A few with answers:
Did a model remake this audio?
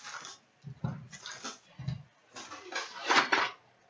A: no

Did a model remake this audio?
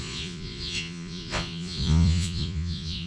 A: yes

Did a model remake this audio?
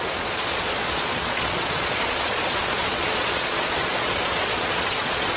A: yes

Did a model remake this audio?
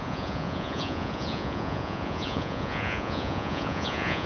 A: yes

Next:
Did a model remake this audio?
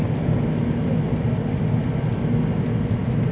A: no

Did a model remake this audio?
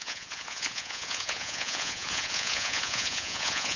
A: yes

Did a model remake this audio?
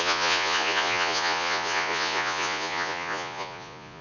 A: yes